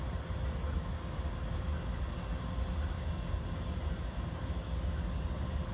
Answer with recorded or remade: recorded